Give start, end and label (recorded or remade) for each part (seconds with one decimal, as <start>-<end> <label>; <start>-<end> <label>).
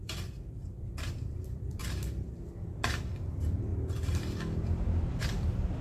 0.0-1.8 remade; 1.8-2.6 recorded; 2.6-5.8 remade